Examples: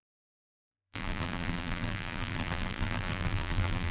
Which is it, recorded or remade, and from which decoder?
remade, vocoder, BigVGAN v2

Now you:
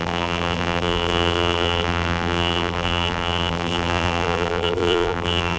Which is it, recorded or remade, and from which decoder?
remade, vocoder, BigVGAN v2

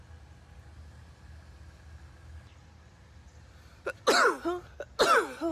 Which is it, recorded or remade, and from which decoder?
recorded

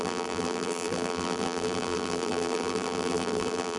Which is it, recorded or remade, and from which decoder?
remade, vocoder, BigVGAN v2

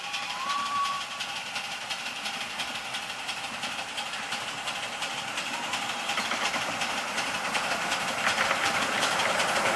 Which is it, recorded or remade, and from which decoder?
remade, vocoder, BigVGAN v2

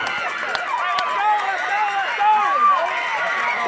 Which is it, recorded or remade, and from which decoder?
recorded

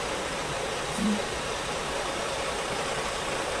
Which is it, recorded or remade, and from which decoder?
remade, vocoder, BigVGAN v2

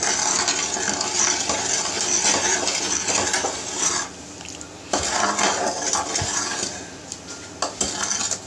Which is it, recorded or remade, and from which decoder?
recorded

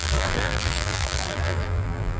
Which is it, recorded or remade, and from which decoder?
remade, vocoder, BigVGAN v2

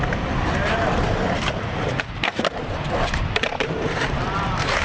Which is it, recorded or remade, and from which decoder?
remade, vocoder, BigVGAN v2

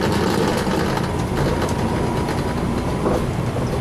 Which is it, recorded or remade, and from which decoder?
recorded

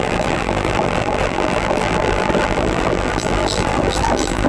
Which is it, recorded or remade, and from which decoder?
remade, vocoder, BigVGAN v2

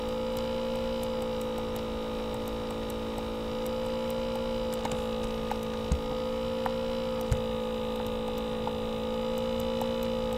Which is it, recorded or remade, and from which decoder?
recorded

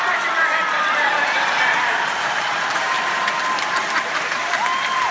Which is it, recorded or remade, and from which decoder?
remade, vocoder, BigVGAN v2